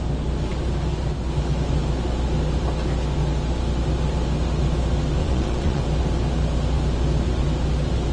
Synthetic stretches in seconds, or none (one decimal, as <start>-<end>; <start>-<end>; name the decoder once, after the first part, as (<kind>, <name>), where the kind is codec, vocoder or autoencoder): 5.2-5.8 (vocoder, Vocos)